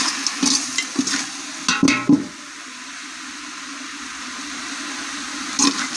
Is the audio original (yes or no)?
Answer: yes